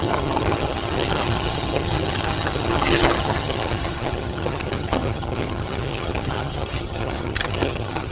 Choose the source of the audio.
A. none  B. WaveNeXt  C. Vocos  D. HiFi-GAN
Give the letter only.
D